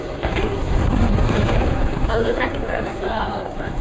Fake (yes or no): yes